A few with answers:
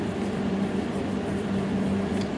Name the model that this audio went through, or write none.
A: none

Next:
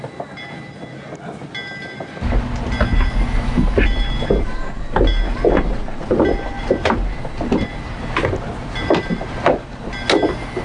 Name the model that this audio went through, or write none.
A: none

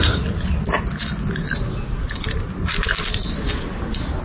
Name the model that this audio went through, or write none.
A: none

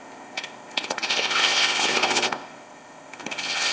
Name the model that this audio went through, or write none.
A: codec, ZipCodec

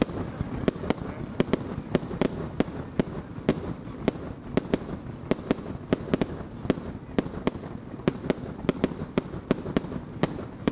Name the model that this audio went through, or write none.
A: none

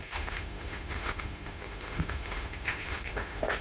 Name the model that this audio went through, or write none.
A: autoencoder, DAC-VAE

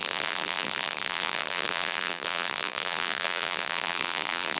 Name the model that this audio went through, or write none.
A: vocoder, BigVGAN v2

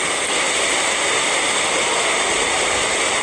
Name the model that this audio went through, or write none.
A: none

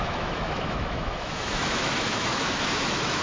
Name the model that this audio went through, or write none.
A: autoencoder, DAC-VAE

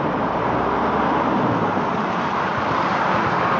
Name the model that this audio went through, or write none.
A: vocoder, BigVGAN v2